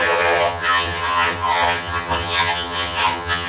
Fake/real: fake